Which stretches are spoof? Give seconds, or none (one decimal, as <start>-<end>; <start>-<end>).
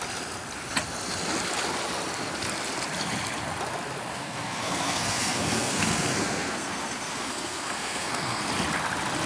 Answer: 4.1-8.4